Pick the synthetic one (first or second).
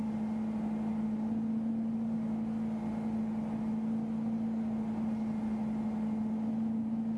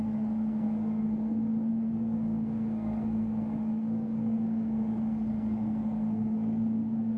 second